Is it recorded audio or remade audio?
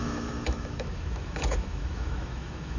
remade